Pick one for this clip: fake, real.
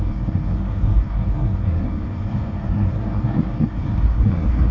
fake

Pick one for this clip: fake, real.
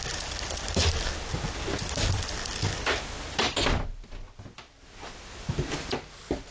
real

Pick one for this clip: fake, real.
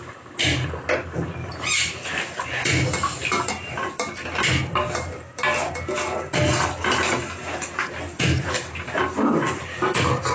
real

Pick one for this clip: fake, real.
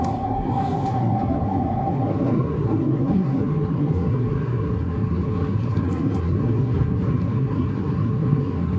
fake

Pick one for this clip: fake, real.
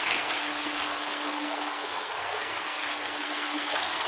fake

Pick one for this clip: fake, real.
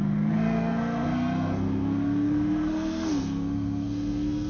fake